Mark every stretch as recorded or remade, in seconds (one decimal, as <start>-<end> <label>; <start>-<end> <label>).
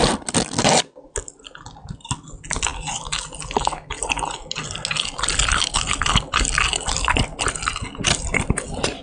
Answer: 0.0-9.0 recorded